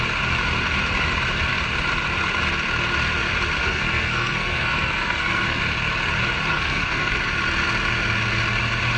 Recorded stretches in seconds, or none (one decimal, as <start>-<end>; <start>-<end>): 0.0-3.6; 5.6-6.5; 7.1-9.0